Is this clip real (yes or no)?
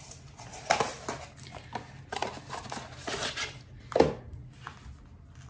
yes